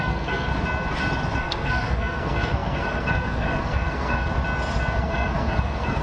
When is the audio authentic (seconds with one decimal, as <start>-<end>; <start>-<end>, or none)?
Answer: 0.5-1.4; 4.3-5.0

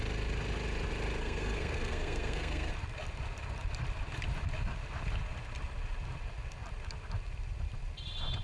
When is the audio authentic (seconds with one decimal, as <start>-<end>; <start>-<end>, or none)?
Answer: 0.0-1.2; 2.7-8.4

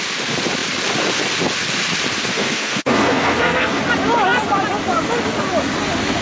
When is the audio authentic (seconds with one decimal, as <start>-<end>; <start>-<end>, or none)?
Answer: 0.0-2.3; 3.8-6.2